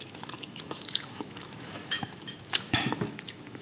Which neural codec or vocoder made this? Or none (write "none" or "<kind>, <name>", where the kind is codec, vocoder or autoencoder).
autoencoder, DAC-VAE